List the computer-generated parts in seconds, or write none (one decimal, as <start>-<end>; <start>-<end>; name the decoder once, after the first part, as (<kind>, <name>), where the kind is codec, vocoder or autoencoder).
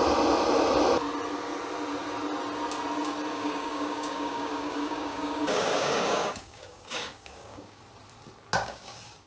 3.3-7.8 (codec, DAC); 8.6-9.3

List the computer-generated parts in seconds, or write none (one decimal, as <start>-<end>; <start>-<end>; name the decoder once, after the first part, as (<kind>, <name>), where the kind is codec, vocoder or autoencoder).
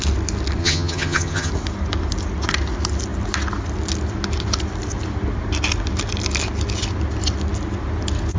0.6-1.5 (vocoder, HiFi-GAN)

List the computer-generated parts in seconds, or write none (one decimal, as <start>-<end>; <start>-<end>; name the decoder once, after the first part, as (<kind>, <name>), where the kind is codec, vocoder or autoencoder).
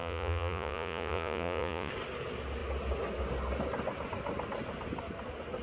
0.0-1.9 (vocoder, Vocos)